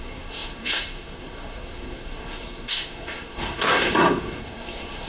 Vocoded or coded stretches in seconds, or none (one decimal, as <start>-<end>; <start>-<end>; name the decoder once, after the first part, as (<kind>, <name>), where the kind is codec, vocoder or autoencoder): 0.0-5.1 (codec, SNAC)